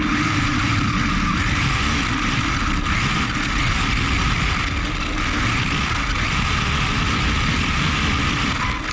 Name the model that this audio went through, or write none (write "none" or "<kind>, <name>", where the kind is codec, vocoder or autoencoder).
none